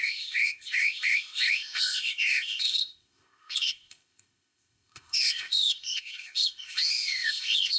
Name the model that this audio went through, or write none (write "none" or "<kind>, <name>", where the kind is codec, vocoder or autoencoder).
codec, ZipCodec